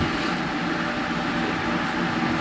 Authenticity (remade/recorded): recorded